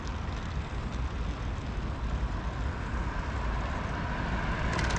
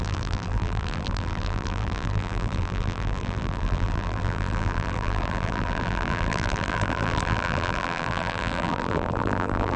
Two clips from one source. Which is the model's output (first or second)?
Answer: second